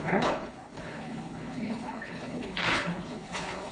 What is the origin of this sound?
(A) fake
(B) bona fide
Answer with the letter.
A